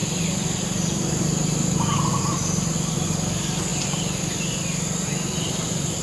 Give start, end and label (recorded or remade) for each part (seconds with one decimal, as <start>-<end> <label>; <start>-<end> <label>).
0.0-1.2 remade; 1.2-6.0 recorded